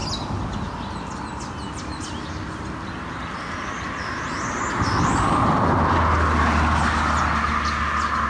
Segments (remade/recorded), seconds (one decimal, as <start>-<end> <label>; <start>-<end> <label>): 0.0-8.3 recorded